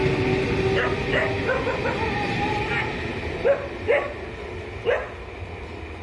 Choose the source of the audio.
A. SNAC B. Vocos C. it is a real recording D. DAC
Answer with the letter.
C